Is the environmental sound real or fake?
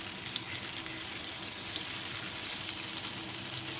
real